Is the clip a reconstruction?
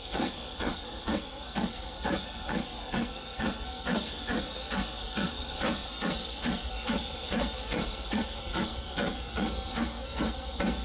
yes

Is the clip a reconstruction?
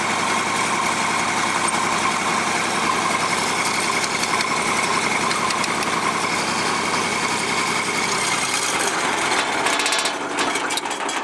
no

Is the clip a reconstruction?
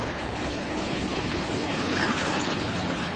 yes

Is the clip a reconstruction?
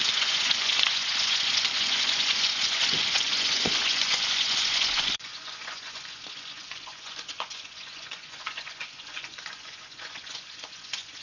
yes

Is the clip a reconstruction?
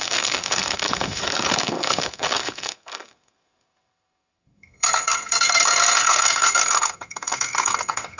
yes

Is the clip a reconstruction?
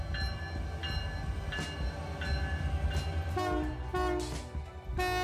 no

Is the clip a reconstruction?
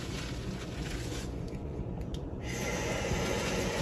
yes